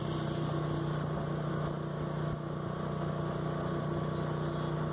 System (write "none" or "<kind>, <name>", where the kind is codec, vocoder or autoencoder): none